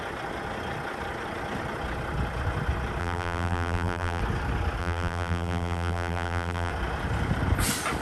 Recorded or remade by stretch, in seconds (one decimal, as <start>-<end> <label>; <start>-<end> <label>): 0.0-3.0 recorded; 3.0-4.2 remade; 4.2-4.8 recorded; 4.8-6.7 remade; 6.7-8.0 recorded